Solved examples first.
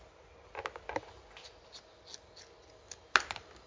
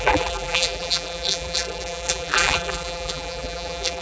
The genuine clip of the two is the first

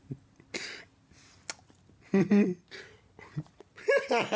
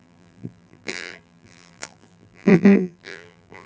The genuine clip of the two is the first